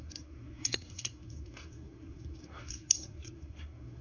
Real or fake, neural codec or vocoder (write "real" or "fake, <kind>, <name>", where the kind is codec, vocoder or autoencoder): fake, codec, SNAC